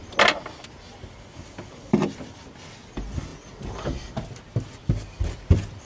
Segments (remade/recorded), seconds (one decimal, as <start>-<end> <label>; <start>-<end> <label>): 0.0-5.8 recorded